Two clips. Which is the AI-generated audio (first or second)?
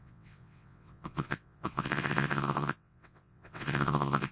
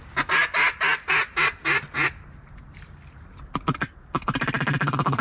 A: first